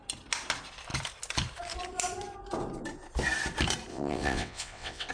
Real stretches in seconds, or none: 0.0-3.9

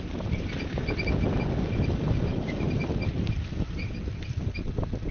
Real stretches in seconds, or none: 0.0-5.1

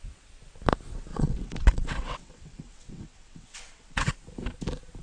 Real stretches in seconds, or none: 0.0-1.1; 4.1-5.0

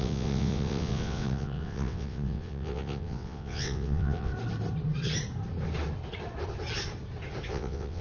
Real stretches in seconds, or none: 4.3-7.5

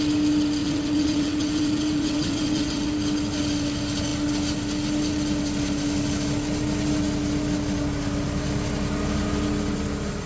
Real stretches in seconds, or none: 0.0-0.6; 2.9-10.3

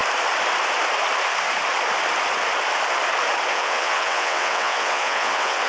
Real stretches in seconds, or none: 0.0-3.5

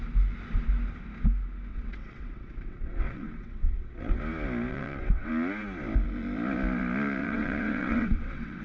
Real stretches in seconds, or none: 0.0-1.7; 4.2-4.7; 5.3-7.2